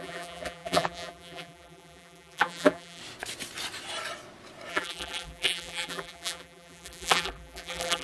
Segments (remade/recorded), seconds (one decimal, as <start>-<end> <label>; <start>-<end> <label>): 0.0-3.0 remade; 3.0-4.7 recorded; 4.7-8.0 remade